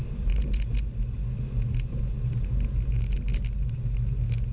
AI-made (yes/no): no